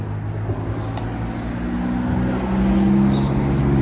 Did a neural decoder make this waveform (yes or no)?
no